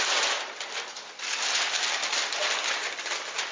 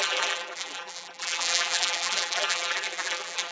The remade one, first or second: second